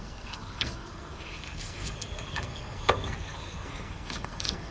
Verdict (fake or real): fake